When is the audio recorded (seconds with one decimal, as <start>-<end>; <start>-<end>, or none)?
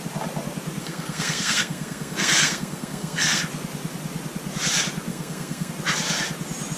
0.0-0.8; 3.4-5.1; 5.7-6.8